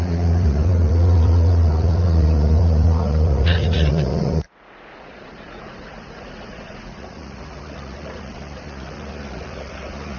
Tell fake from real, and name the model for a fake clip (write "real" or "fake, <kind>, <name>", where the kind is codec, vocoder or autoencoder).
fake, vocoder, Vocos